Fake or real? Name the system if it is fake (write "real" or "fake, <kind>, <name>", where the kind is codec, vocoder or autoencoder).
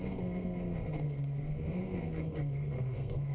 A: fake, codec, SNAC